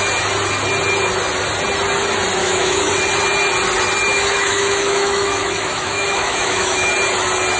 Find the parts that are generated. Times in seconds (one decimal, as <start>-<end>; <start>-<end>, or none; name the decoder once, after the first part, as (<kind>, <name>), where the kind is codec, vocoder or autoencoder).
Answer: 2.4-2.9 (autoencoder, DAC-VAE); 4.1-6.9